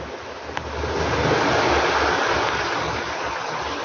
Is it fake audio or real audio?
real